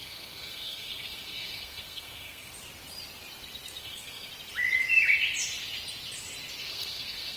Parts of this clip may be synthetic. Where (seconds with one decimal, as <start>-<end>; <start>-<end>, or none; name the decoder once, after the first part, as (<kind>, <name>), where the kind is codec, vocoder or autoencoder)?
0.0-2.5 (codec, SNAC); 3.8-4.3; 6.6-7.4